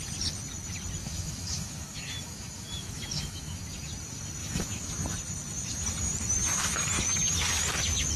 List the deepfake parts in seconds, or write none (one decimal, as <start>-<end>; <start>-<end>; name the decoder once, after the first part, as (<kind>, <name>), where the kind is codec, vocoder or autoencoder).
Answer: 1.0-3.6 (autoencoder, DAC-VAE); 4.4-4.9